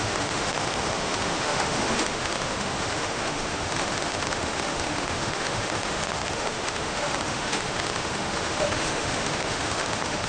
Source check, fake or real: fake